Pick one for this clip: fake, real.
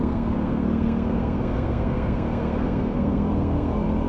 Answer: fake